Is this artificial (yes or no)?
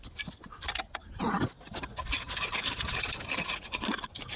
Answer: no